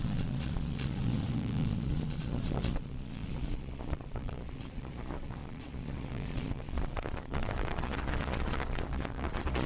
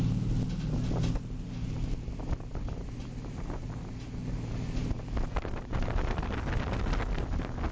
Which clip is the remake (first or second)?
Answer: first